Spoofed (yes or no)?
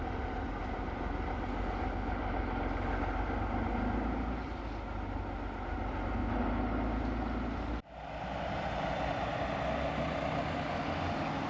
no